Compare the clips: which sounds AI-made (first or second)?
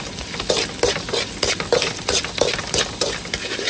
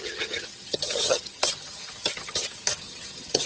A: second